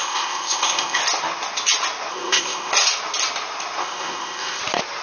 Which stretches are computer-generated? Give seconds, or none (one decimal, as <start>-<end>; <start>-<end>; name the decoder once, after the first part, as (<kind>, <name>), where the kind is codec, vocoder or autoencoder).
0.0-1.0 (codec, ZipCodec); 2.1-2.7; 3.8-4.6